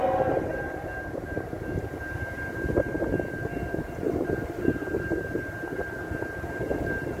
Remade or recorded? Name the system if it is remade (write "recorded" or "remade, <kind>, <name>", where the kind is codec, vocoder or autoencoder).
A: remade, vocoder, BigVGAN v2